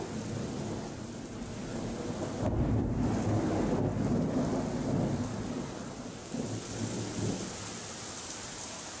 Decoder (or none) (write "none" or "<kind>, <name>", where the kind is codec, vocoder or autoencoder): none